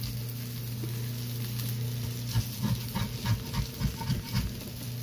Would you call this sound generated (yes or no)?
no